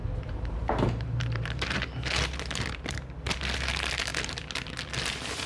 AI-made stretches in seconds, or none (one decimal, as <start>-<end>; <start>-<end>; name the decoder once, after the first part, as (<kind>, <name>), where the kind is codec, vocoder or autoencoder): 0.0-1.6 (vocoder, BigVGAN v2)